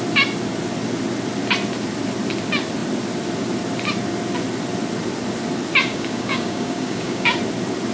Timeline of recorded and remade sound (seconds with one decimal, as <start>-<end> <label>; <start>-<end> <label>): 0.0-5.9 recorded; 5.9-7.4 remade; 7.4-7.9 recorded

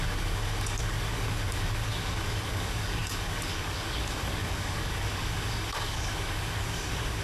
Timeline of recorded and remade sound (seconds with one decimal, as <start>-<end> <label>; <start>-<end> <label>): 0.0-7.2 remade

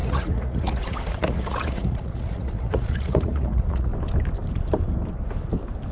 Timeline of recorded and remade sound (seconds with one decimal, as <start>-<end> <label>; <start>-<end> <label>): 0.0-3.9 remade; 3.9-5.9 recorded

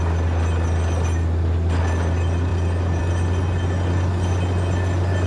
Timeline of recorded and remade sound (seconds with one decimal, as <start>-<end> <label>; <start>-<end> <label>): 0.0-5.3 recorded

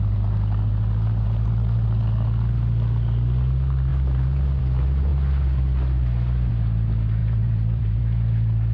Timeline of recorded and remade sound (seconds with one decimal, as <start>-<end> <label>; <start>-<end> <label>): 0.0-7.2 recorded; 7.2-8.0 remade; 8.0-8.7 recorded

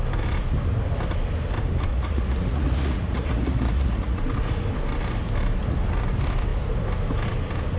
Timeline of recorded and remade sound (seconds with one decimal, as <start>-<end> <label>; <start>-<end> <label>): 0.0-1.9 recorded; 1.9-4.2 remade; 4.2-7.8 recorded